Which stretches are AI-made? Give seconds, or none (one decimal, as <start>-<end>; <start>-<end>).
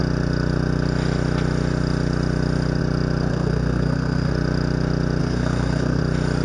3.3-4.3; 5.2-6.0